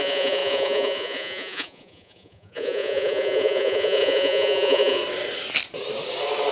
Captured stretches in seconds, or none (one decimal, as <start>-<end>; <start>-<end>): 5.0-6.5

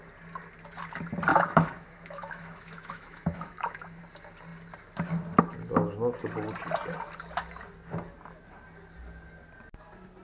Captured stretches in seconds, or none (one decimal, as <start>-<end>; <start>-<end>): 0.0-1.3; 4.0-10.2

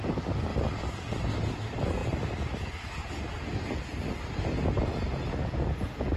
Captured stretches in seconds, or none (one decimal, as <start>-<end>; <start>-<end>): 0.0-6.2

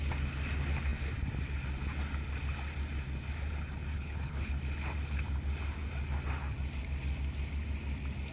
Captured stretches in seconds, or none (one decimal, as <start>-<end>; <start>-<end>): 0.0-3.9; 4.5-8.3

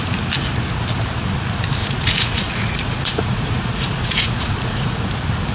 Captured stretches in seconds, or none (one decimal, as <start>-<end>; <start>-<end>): 0.0-1.8; 5.1-5.5